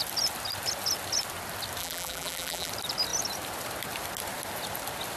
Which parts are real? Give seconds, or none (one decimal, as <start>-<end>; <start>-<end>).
0.0-1.8; 2.7-5.2